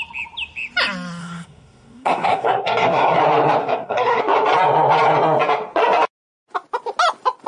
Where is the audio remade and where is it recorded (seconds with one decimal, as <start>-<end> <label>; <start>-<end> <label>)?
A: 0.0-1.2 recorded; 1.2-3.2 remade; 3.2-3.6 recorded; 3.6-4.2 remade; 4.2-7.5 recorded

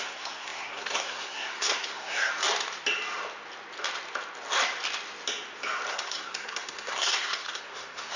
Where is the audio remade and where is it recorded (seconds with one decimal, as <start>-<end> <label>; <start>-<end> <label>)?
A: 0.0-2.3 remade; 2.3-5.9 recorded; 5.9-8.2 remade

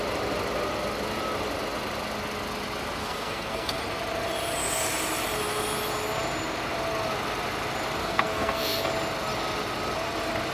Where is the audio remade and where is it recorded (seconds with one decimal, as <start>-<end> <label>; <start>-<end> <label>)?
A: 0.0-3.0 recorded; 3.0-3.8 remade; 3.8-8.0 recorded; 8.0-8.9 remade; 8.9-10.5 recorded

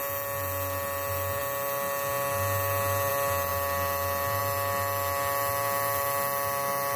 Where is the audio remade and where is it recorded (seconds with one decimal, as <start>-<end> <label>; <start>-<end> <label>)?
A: 0.0-7.0 recorded

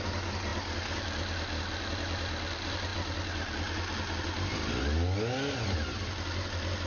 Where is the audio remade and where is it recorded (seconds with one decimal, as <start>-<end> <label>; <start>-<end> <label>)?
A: 0.0-6.9 recorded

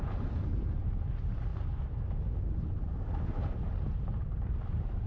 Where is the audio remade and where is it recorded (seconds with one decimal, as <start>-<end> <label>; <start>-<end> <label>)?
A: 0.0-5.1 recorded

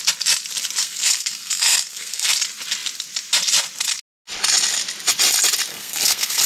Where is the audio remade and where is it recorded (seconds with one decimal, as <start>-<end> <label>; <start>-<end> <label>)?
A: 0.0-0.8 recorded; 0.8-2.3 remade; 2.3-5.7 recorded; 5.7-6.5 remade